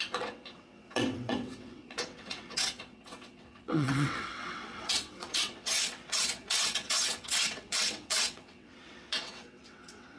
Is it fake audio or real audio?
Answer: fake